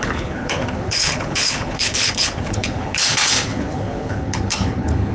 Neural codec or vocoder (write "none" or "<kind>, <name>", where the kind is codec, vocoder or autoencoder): codec, HILCodec